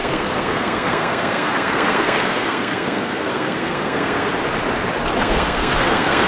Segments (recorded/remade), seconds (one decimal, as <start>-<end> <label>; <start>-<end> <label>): 0.0-4.3 remade; 4.3-5.2 recorded; 5.2-6.3 remade